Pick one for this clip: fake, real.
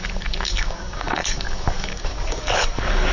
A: fake